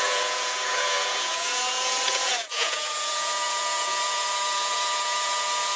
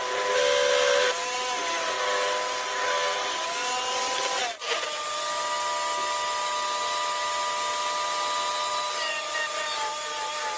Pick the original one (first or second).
second